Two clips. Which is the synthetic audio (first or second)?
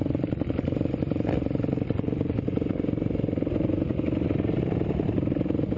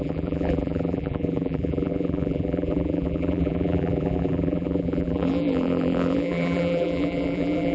second